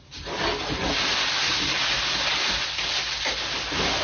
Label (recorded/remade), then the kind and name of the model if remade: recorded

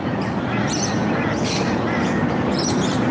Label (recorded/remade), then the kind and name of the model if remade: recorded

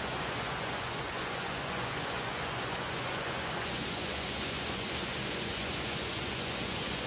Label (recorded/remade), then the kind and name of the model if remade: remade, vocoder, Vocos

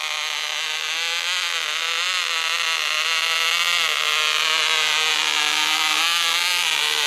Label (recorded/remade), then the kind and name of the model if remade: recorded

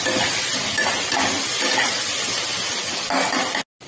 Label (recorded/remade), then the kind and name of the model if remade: recorded